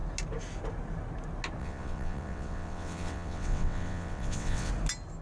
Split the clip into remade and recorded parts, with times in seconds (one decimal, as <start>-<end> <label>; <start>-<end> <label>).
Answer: 0.0-1.6 recorded; 1.6-4.7 remade; 4.7-5.2 recorded